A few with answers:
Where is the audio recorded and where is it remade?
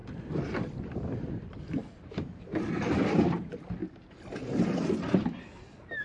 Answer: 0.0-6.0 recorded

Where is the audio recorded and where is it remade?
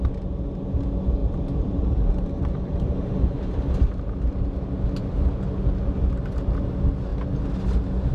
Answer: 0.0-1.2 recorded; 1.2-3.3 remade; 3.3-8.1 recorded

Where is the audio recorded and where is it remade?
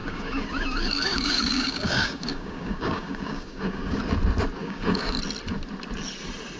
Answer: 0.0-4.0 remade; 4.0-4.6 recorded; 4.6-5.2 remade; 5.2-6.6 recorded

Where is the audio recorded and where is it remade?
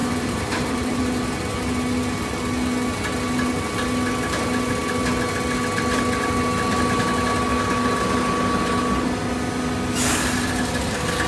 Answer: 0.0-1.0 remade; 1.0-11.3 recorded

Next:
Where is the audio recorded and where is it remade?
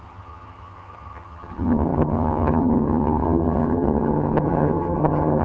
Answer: 0.0-5.4 remade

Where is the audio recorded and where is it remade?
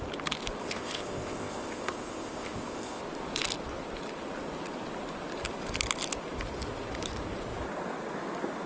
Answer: 0.0-0.6 recorded; 0.6-3.0 remade; 3.0-8.7 recorded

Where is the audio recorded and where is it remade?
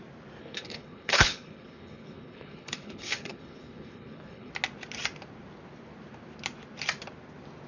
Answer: 0.0-0.4 recorded; 0.4-4.5 remade; 4.5-7.7 recorded